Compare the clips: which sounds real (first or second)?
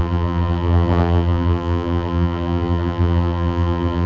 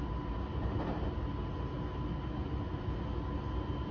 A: second